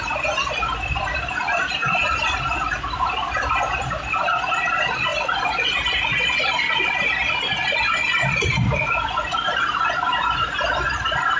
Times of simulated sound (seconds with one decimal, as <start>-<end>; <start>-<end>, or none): none